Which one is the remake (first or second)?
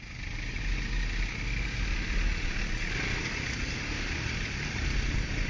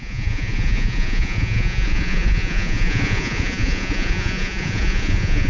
second